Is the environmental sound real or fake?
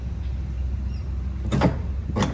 real